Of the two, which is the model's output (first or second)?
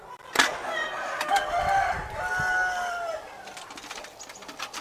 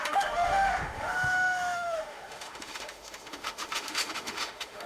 second